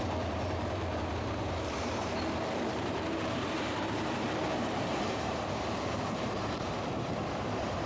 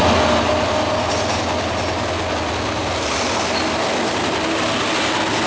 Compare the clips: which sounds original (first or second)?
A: second